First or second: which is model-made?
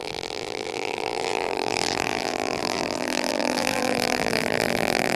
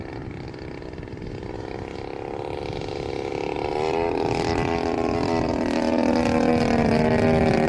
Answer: first